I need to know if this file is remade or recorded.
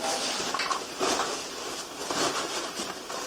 recorded